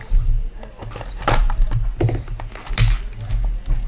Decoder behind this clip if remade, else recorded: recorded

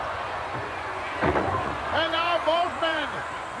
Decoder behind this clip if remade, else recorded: remade, vocoder, Vocos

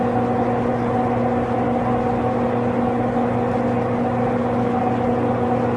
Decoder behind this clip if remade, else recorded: recorded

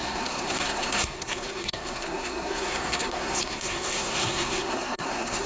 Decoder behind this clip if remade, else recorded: remade, codec, SNAC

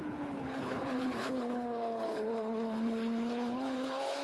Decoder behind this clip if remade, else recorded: remade, codec, HILCodec